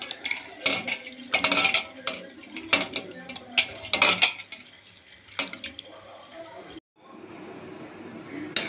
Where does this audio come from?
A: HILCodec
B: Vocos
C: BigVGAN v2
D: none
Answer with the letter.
D